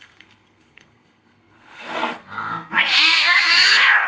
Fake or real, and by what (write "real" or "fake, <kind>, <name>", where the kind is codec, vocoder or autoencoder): fake, codec, SNAC